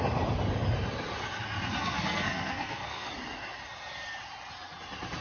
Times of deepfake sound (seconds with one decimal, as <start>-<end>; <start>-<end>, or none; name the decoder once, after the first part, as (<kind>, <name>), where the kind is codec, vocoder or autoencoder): 1.8-3.1 (codec, SNAC)